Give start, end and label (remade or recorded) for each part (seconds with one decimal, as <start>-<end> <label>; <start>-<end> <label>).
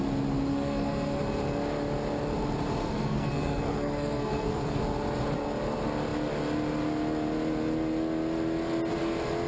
0.0-0.5 recorded; 0.5-1.2 remade; 1.2-2.8 recorded; 2.8-4.8 remade; 4.8-9.5 recorded